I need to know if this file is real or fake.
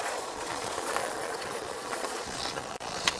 fake